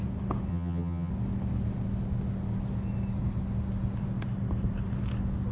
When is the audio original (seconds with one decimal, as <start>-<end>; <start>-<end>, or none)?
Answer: 0.0-0.5; 1.1-5.5